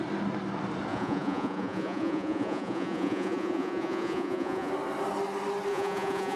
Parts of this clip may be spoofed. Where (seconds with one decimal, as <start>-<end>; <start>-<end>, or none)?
0.9-4.7; 5.7-6.4